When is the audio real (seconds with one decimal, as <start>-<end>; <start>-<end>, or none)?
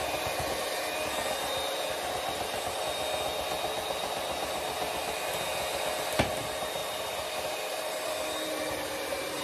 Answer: 0.0-6.8